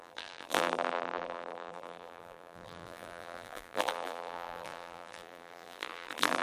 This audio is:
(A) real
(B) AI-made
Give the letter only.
B